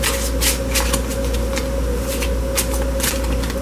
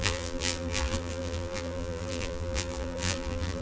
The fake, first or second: second